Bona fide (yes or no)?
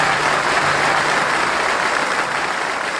yes